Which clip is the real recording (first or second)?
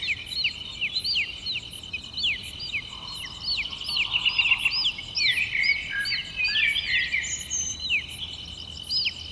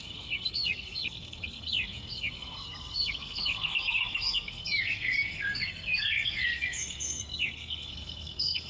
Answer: first